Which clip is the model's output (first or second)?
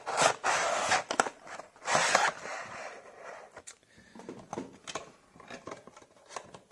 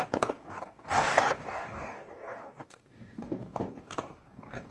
second